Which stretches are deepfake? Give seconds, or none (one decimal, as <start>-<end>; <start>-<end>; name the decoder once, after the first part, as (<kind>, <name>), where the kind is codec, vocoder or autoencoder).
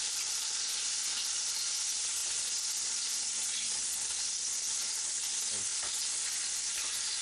none